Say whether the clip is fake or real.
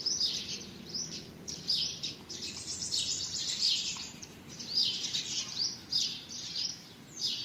fake